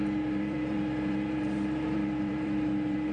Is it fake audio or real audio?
fake